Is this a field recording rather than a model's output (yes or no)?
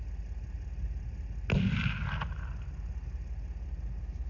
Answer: yes